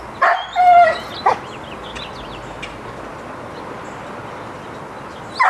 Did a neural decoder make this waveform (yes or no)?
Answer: no